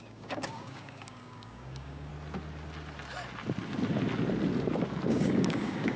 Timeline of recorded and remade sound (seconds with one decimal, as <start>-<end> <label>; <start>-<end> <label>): 0.0-2.1 remade; 2.1-5.1 recorded; 5.1-6.0 remade